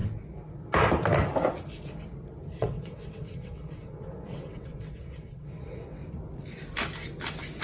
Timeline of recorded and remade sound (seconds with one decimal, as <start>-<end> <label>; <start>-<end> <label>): 0.0-2.6 recorded; 2.6-6.0 remade; 6.0-7.6 recorded